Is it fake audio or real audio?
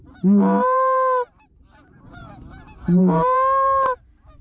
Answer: fake